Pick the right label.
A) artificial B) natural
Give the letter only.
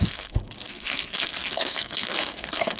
A